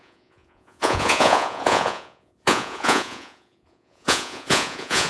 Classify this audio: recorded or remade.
remade